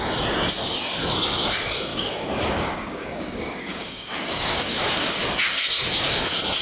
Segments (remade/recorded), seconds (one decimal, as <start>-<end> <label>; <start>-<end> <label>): 0.0-1.9 recorded; 1.9-4.8 remade; 4.8-6.6 recorded